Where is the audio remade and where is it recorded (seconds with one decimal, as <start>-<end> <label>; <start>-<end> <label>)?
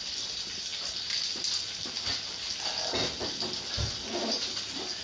0.0-5.0 recorded